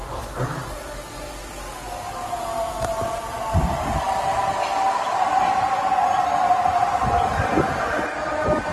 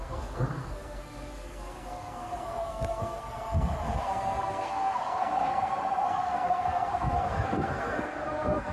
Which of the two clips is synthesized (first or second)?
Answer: second